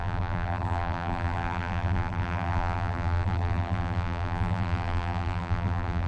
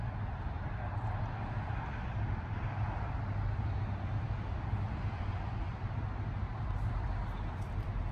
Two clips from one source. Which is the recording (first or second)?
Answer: second